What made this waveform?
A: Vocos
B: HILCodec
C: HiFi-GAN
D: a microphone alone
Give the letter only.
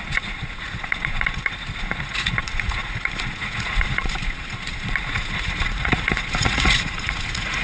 A